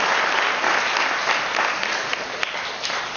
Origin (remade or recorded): recorded